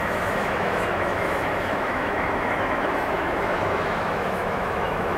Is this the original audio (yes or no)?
no